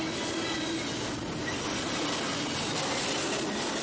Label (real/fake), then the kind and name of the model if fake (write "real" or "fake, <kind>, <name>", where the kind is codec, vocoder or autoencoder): real